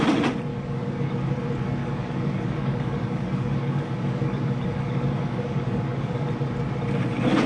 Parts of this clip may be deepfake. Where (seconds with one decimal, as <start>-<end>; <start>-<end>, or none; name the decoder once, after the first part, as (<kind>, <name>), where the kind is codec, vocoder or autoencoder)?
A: 0.5-1.1 (codec, DAC); 1.8-6.3